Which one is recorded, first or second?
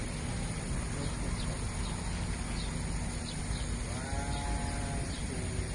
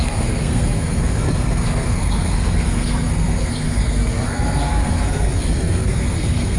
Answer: first